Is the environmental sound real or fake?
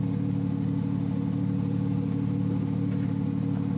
real